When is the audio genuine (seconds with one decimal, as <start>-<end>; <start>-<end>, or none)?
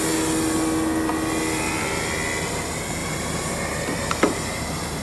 0.0-3.0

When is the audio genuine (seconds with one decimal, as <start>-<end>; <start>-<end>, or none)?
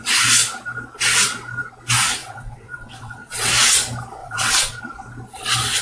0.0-2.2; 3.5-4.2; 4.8-5.8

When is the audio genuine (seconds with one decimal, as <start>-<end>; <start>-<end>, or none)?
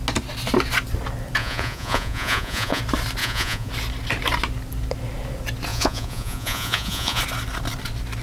0.0-1.4; 2.8-3.2; 3.7-5.7; 7.2-8.2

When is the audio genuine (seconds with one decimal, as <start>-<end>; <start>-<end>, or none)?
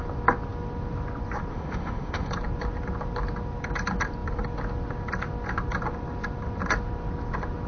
0.0-1.5; 2.3-7.7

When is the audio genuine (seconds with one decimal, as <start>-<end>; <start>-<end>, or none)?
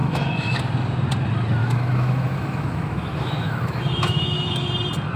0.6-1.6; 4.7-5.2